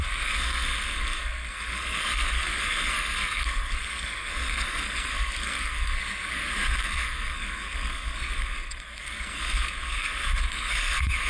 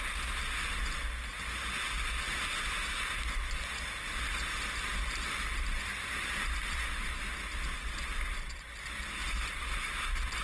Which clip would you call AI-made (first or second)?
first